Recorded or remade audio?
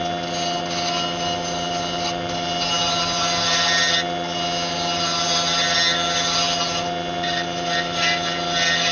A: recorded